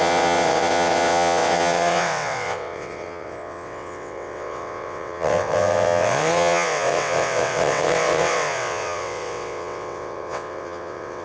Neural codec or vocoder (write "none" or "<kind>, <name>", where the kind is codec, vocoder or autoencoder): vocoder, WaveNeXt